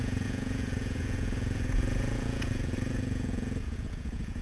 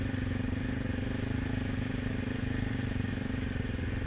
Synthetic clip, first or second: first